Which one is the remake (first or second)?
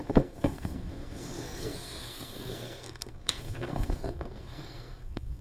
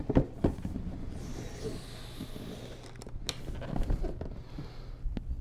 first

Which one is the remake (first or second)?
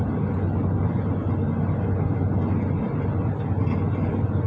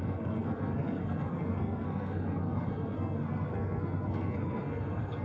second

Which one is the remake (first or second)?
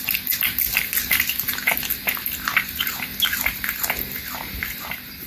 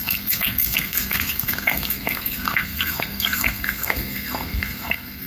second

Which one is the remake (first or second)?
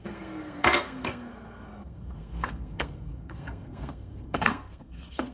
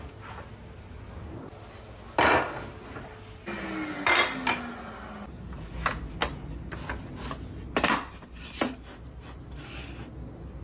first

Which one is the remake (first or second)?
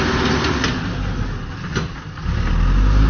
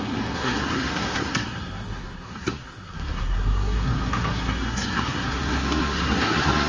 second